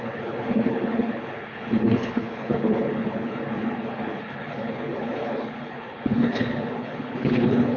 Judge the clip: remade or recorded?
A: remade